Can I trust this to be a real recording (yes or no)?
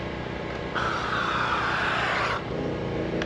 yes